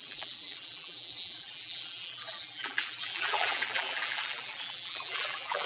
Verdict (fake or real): fake